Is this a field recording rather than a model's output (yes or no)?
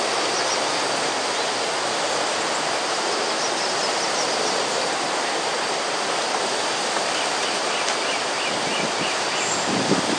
no